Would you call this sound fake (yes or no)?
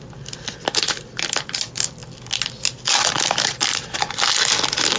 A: no